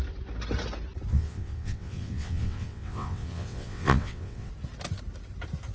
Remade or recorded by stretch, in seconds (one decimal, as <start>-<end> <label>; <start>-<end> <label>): 0.0-1.1 recorded; 1.1-4.5 remade; 4.5-5.7 recorded